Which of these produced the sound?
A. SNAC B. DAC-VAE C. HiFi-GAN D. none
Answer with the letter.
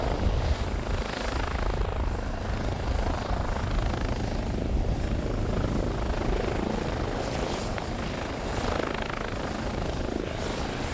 D